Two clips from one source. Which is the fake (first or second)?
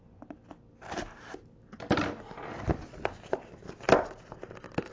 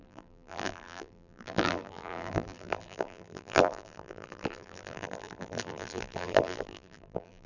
second